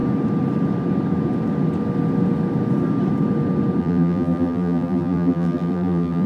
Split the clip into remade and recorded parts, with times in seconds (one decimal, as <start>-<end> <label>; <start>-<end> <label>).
0.0-3.8 recorded; 3.8-6.3 remade